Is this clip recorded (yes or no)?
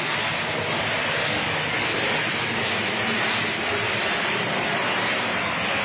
yes